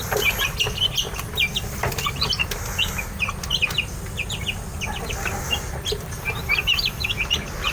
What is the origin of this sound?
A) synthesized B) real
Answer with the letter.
B